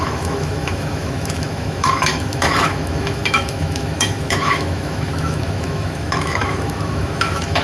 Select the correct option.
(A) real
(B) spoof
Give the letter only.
B